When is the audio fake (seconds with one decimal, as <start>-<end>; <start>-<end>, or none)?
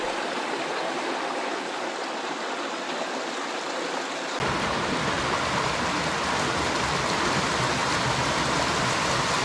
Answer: none